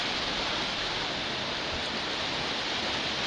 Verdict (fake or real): real